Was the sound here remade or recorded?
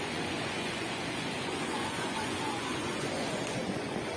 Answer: remade